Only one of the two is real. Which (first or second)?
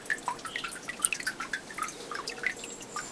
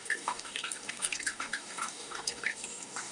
first